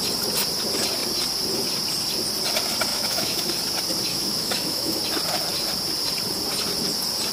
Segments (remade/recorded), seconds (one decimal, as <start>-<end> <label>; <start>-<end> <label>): 0.0-2.9 recorded; 2.9-3.5 remade; 3.5-4.1 recorded; 4.1-5.0 remade; 5.0-7.3 recorded